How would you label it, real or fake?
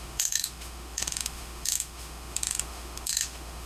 fake